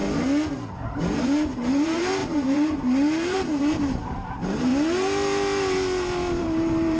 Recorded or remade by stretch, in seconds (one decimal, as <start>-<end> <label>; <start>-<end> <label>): 0.0-0.7 recorded; 0.7-4.7 remade; 4.7-6.4 recorded; 6.4-7.0 remade